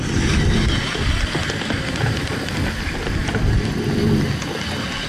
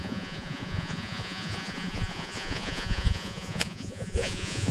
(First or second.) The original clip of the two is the first